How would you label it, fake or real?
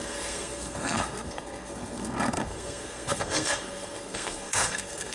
fake